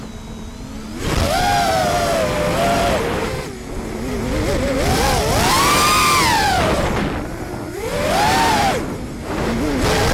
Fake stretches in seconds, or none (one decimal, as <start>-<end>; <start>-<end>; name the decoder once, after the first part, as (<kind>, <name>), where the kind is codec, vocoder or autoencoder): 7.9-9.3 (vocoder, BigVGAN v2)